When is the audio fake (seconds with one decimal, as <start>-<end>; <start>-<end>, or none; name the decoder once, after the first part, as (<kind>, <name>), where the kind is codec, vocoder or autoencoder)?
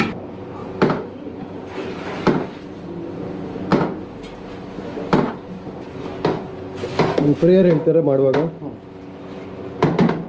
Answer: none